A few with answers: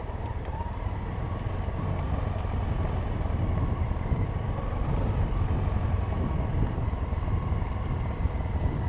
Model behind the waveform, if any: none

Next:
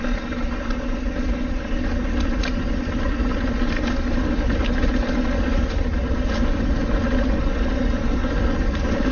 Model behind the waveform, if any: none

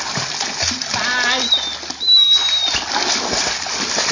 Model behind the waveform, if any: none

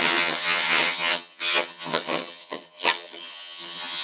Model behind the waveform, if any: vocoder, HiFi-GAN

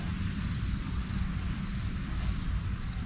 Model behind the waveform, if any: none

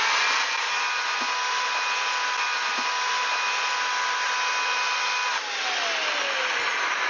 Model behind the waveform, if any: none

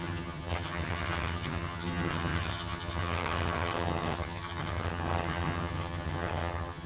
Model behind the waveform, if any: vocoder, HiFi-GAN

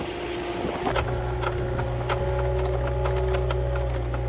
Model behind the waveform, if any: none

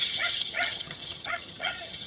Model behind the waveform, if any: vocoder, HiFi-GAN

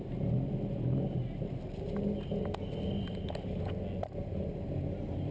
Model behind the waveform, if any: none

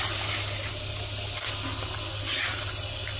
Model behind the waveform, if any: none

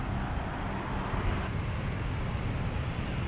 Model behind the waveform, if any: none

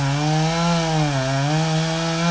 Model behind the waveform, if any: none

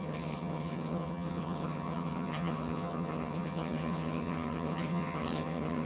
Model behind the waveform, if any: vocoder, HiFi-GAN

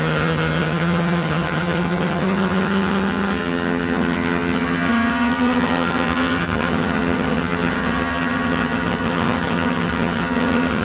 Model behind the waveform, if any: vocoder, HiFi-GAN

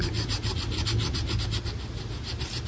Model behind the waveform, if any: none